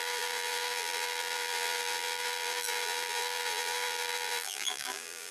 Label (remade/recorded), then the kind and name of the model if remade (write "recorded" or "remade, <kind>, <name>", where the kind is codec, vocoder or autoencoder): remade, vocoder, BigVGAN v2